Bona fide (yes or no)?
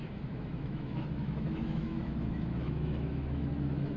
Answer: no